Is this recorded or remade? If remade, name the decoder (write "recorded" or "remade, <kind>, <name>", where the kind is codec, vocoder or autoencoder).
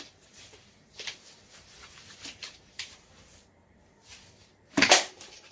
remade, vocoder, BigVGAN v2